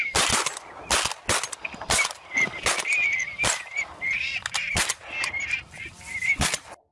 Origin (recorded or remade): recorded